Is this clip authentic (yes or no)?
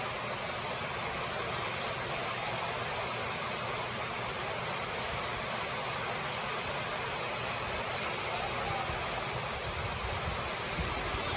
yes